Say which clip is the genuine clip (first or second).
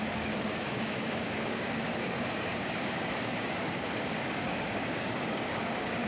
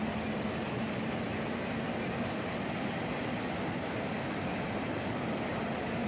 second